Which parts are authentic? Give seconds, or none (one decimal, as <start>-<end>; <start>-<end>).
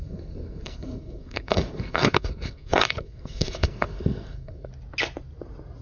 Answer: 4.7-5.8